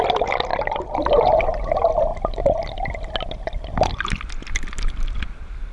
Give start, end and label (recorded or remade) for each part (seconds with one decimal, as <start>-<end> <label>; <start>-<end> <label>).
0.0-0.5 recorded; 0.5-1.4 remade; 1.4-5.7 recorded